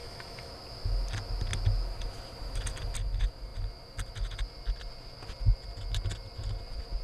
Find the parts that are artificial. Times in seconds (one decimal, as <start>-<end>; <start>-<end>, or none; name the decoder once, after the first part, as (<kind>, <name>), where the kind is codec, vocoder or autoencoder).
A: 0.0-0.5 (autoencoder, DAC-VAE)